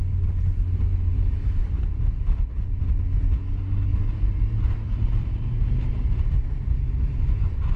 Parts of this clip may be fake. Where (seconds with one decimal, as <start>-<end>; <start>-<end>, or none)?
1.6-2.8; 3.9-7.3